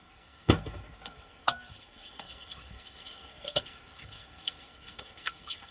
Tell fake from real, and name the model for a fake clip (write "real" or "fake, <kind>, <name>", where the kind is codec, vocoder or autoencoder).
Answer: fake, codec, SNAC